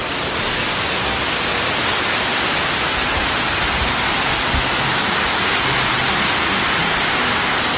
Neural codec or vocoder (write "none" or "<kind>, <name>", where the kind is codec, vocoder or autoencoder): none